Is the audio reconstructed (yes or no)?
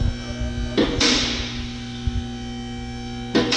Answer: no